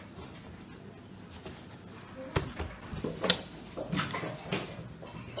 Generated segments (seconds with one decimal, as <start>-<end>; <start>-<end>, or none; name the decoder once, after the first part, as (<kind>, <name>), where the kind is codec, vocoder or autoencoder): none